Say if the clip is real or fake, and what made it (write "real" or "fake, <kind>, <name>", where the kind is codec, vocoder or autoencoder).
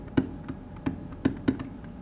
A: real